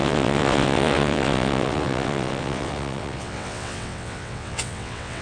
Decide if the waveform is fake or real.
fake